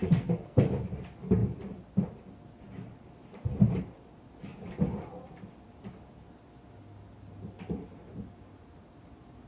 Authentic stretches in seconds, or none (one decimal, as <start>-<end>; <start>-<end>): 0.6-9.5